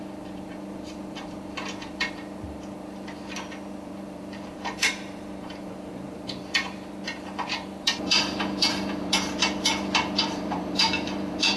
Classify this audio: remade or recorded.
remade